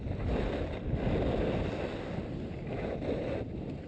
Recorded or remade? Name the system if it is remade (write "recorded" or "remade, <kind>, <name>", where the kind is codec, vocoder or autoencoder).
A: recorded